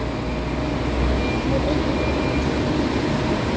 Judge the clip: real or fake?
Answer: real